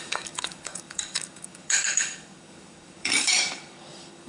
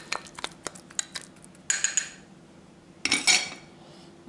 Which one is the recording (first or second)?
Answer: second